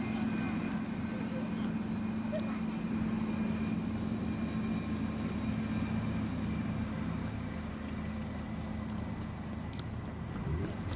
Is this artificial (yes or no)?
no